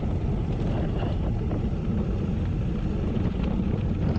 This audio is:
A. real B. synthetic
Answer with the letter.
A